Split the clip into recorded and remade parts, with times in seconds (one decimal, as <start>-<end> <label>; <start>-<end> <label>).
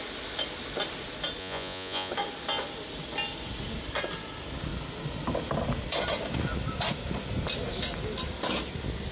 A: 0.0-1.4 recorded; 1.4-2.1 remade; 2.1-9.1 recorded